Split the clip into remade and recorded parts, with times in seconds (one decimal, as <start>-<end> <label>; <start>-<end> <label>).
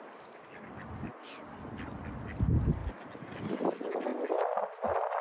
0.0-5.2 recorded